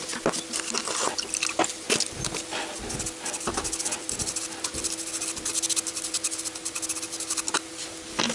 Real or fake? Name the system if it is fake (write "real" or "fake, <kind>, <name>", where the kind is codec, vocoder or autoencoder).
real